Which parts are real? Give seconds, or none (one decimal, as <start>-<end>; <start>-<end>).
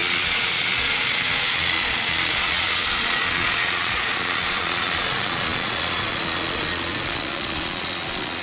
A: none